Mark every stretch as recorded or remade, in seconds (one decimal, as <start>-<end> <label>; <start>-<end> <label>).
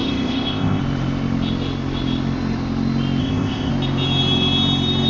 0.0-0.8 remade; 0.8-3.2 recorded; 3.2-3.7 remade; 3.7-5.1 recorded